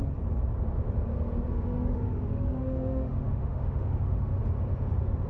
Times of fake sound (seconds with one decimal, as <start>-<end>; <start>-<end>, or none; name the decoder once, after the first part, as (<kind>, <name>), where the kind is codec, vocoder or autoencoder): 1.5-4.4 (autoencoder, DAC-VAE)